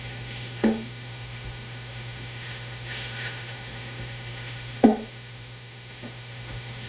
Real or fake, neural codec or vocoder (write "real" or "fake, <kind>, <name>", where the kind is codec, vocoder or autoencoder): fake, autoencoder, DAC-VAE